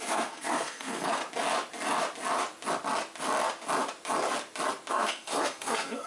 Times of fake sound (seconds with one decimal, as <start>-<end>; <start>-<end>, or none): 0.0-1.2; 4.9-6.1